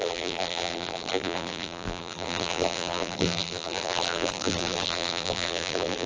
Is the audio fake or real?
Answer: fake